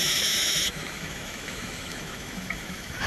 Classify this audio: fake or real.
fake